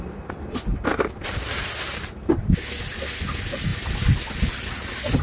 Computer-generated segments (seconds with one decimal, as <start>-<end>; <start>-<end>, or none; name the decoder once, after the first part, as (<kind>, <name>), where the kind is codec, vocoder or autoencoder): 0.7-2.3 (vocoder, BigVGAN v2)